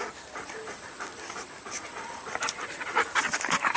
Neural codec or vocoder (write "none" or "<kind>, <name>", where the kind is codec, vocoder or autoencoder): vocoder, BigVGAN v2